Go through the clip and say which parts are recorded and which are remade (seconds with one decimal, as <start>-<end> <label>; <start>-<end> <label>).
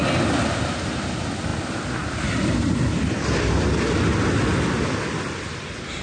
0.0-6.0 recorded